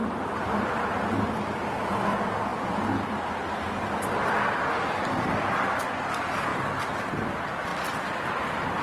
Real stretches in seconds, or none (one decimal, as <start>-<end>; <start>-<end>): 0.0-6.5; 7.3-8.8